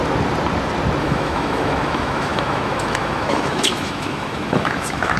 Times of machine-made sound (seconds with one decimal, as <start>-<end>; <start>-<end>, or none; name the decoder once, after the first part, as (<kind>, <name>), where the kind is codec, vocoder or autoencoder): 1.0-5.2 (autoencoder, DAC-VAE)